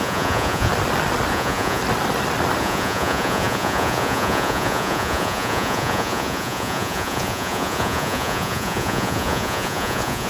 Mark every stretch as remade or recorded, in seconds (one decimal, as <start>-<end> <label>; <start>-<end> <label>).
0.0-0.7 remade; 0.7-1.3 recorded; 1.3-1.8 remade; 1.8-2.6 recorded; 2.6-10.3 remade

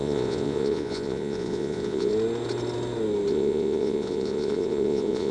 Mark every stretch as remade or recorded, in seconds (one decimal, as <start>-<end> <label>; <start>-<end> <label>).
0.0-2.1 remade; 2.1-3.3 recorded; 3.3-5.3 remade

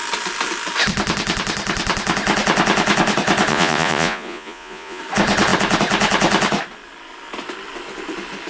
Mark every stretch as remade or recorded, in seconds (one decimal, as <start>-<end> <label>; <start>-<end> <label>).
0.0-3.5 recorded; 3.5-5.0 remade; 5.0-8.5 recorded

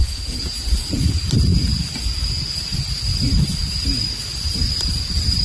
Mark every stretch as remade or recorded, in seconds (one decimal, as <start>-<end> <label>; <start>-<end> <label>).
0.0-0.9 remade; 0.9-5.4 recorded